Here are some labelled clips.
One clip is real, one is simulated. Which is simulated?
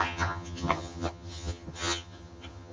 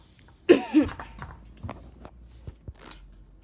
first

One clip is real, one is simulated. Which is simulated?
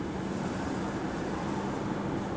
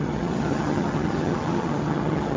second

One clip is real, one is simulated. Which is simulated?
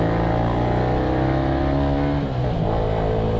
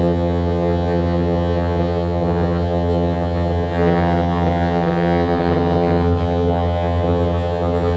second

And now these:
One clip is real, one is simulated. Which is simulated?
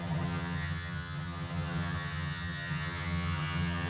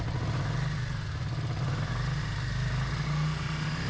first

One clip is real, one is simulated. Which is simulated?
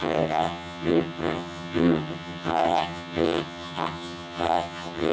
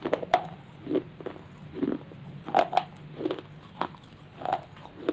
first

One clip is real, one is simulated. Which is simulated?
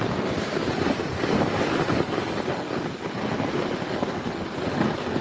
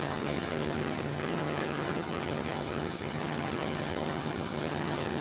second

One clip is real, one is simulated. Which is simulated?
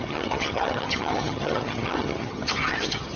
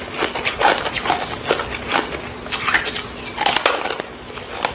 first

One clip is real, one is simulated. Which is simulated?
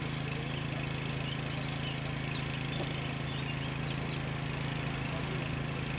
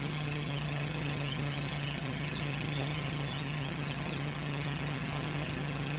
second